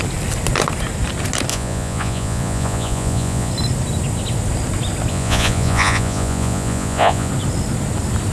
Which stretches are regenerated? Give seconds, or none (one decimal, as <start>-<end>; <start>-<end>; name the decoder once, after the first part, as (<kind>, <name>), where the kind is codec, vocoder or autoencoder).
1.5-3.5 (vocoder, Vocos); 5.1-7.3